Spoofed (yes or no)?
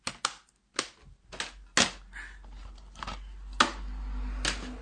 no